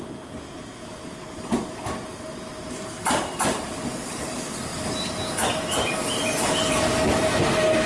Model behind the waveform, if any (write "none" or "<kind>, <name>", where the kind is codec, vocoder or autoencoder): none